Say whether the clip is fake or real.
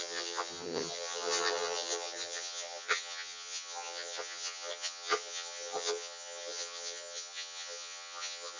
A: fake